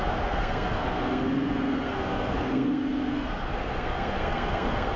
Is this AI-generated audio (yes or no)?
yes